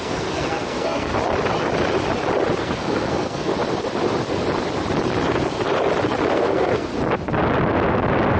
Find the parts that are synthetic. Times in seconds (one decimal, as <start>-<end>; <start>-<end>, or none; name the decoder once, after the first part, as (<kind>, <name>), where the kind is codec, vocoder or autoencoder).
0.0-1.1 (codec, SNAC); 2.6-3.5; 6.3-6.9